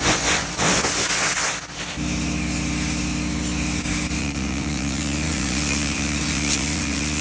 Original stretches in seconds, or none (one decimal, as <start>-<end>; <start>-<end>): 1.3-4.2